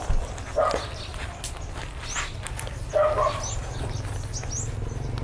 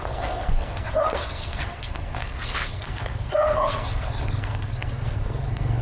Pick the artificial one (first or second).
second